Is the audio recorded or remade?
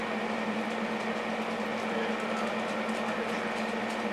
recorded